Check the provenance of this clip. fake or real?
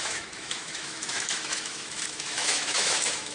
fake